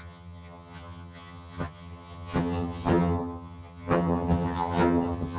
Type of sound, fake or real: fake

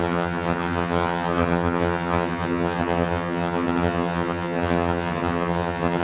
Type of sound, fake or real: fake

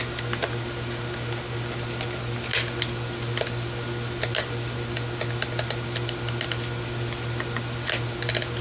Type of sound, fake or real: real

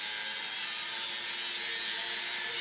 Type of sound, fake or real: real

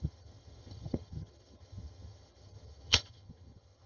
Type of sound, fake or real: fake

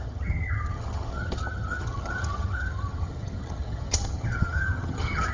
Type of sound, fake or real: fake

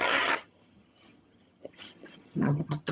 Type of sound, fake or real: fake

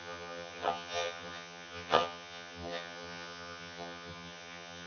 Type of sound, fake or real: fake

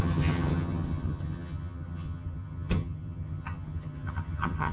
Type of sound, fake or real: fake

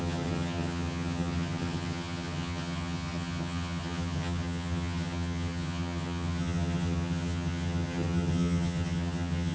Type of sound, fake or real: fake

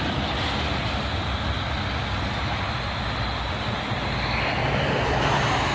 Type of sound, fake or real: real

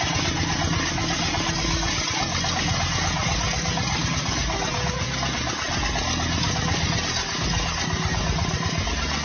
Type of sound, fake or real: real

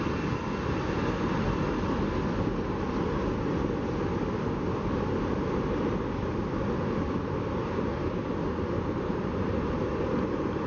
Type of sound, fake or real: real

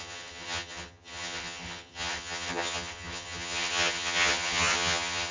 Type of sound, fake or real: fake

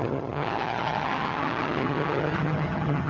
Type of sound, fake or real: fake